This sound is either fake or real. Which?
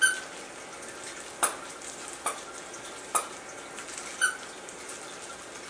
real